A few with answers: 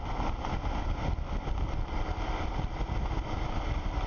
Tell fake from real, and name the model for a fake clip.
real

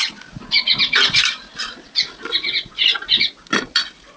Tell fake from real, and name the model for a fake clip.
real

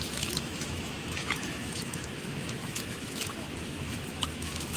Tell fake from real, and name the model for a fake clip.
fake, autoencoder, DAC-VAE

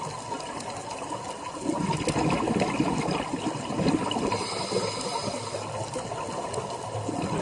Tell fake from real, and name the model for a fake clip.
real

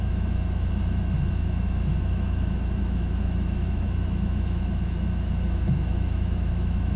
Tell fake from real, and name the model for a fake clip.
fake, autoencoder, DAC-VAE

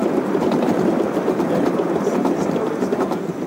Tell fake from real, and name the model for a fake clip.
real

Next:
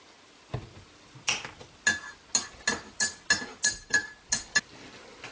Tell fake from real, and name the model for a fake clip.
real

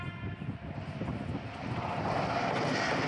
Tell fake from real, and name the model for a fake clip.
real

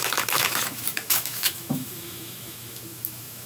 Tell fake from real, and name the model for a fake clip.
fake, autoencoder, DAC-VAE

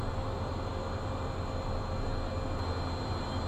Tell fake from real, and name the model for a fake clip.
real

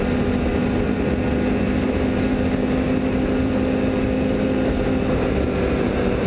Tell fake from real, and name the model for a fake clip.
real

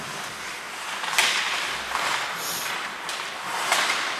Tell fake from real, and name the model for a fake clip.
real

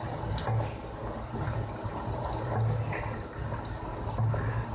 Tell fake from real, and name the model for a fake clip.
real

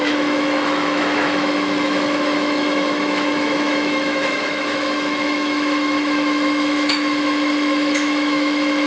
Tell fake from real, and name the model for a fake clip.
fake, autoencoder, DAC-VAE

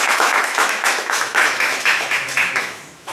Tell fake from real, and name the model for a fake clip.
fake, autoencoder, DAC-VAE